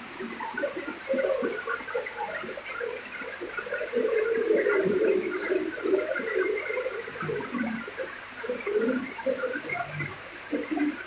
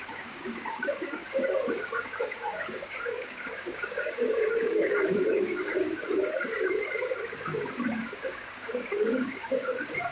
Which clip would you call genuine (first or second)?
first